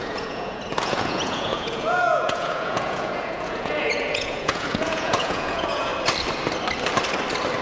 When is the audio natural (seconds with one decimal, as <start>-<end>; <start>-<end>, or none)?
5.9-7.6